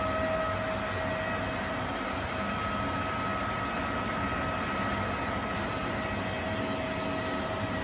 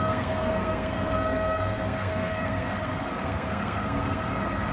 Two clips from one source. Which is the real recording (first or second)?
first